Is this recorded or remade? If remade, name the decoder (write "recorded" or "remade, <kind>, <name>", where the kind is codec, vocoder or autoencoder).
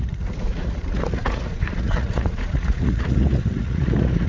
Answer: remade, vocoder, Vocos